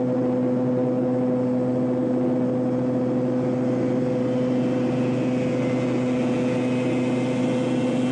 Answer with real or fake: real